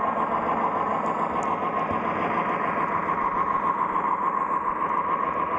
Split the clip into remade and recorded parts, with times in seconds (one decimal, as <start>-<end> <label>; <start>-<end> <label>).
0.0-0.9 recorded; 0.9-1.4 remade; 1.4-2.4 recorded; 2.4-4.8 remade; 4.8-5.6 recorded